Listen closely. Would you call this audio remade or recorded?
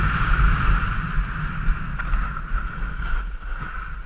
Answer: recorded